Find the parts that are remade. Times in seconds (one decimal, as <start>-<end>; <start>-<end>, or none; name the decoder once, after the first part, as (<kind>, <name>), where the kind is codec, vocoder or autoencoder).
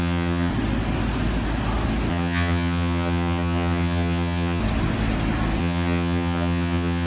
0.0-0.5 (vocoder, HiFi-GAN); 2.1-4.6; 5.6-7.1